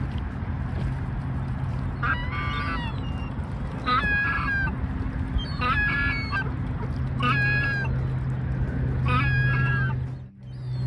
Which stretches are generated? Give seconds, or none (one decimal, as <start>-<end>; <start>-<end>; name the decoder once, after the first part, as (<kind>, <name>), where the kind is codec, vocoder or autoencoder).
none

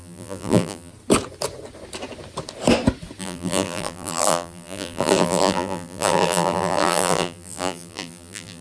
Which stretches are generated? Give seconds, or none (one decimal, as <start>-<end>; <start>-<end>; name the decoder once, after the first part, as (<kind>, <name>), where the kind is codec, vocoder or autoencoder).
0.0-0.9 (vocoder, BigVGAN v2); 3.2-8.6